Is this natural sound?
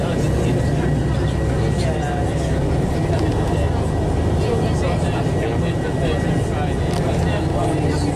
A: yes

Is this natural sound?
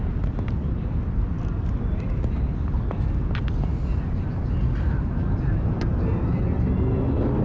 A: yes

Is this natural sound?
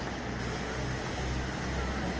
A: yes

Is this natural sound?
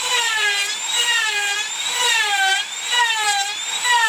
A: no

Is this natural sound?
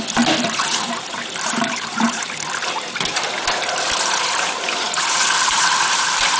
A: no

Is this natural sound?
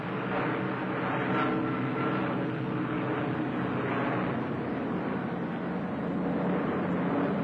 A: yes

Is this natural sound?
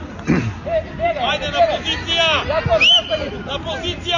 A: yes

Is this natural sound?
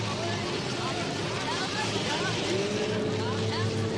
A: yes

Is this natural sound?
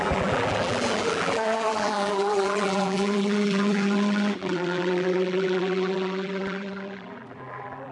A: no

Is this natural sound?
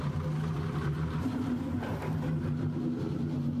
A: no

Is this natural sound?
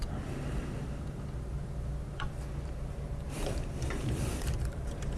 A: no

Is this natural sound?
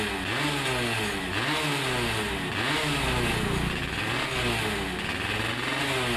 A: yes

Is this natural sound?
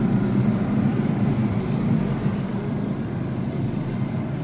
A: no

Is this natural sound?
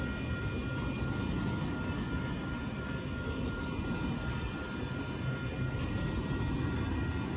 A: yes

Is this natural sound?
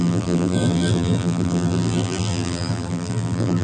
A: no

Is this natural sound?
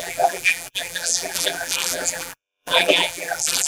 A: no